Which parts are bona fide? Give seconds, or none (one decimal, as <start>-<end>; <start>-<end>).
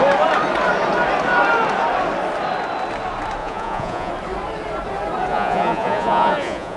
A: 0.0-3.4; 4.1-5.3